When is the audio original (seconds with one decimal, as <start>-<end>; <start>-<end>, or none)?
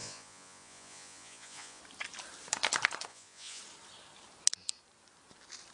1.8-3.1; 3.6-5.7